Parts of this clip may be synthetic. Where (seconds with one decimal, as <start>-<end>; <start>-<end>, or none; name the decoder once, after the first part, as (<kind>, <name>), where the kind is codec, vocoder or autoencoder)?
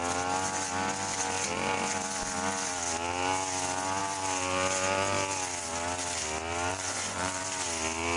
6.7-7.4 (vocoder, Vocos)